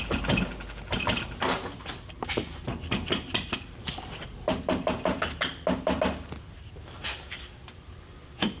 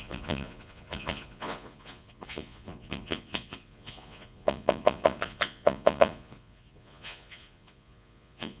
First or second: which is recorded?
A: first